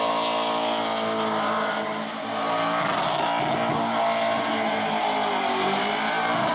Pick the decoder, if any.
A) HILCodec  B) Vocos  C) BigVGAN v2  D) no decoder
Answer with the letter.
D